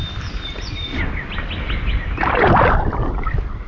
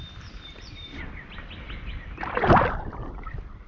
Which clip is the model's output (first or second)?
second